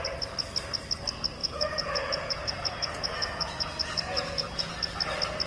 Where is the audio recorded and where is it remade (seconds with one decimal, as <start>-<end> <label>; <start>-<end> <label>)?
0.0-1.4 recorded; 1.4-4.7 remade; 4.7-5.5 recorded